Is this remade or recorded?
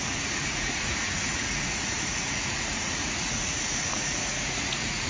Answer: remade